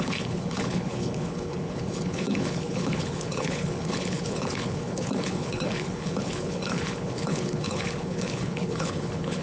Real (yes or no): no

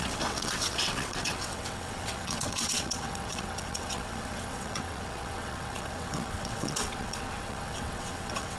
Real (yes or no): no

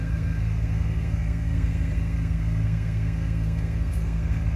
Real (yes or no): no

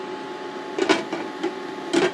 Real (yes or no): yes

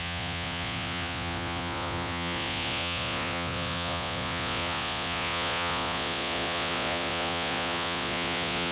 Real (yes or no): no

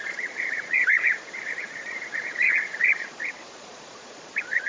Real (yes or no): no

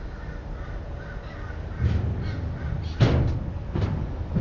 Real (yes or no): yes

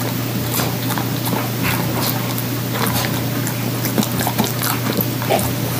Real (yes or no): yes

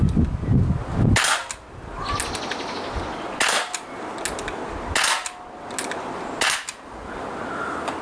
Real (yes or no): yes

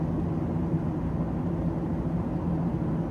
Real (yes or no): yes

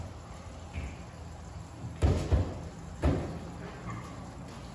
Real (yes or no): yes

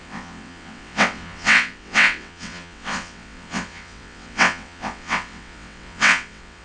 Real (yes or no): no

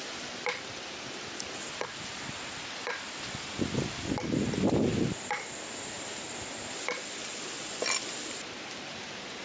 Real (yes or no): yes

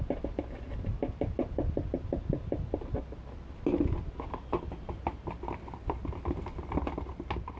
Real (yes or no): yes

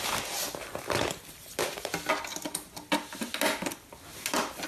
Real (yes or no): yes